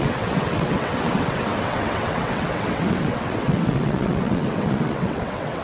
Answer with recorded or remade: remade